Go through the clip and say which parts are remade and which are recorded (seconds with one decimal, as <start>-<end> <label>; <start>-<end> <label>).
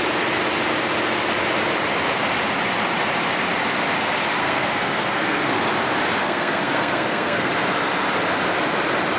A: 0.0-4.4 recorded; 4.4-5.7 remade; 5.7-6.2 recorded; 6.2-7.5 remade; 7.5-9.2 recorded